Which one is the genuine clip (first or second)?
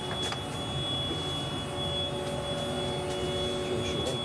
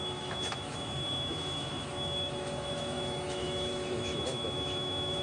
first